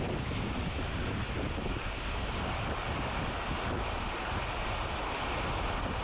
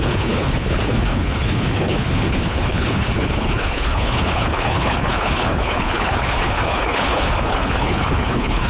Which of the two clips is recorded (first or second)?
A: first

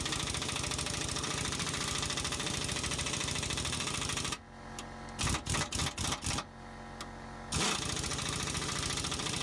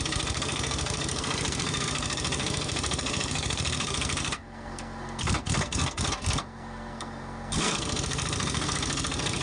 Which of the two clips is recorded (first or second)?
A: first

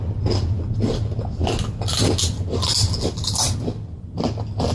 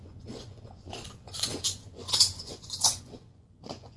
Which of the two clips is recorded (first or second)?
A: first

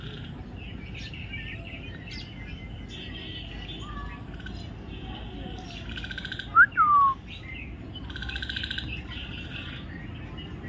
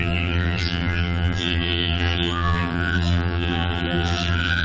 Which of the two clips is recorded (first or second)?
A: first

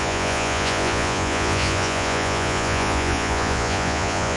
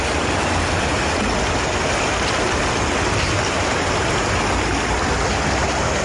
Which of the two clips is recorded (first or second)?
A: second